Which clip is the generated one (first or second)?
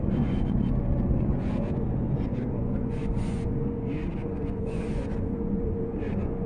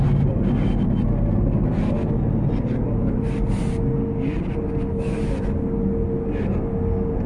first